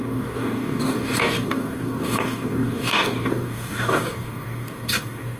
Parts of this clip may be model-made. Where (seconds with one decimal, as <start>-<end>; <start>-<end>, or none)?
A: 0.0-5.4